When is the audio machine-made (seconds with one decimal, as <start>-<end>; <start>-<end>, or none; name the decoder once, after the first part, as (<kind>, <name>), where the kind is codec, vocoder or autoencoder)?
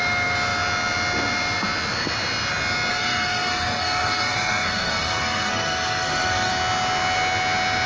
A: 2.9-6.5 (codec, SNAC)